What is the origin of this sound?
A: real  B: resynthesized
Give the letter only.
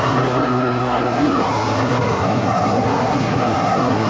B